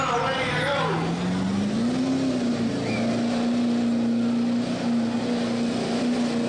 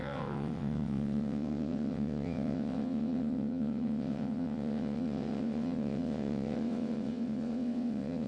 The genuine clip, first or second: first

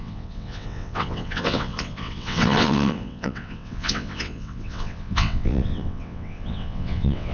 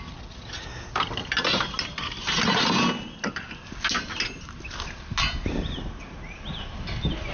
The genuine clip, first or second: second